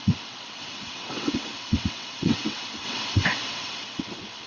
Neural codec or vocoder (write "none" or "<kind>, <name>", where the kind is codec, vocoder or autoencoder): vocoder, WaveNeXt